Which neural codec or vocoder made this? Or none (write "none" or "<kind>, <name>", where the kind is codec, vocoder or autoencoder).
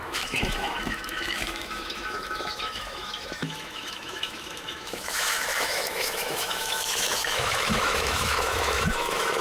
autoencoder, DAC-VAE